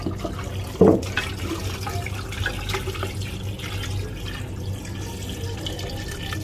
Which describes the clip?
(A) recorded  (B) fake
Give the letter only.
A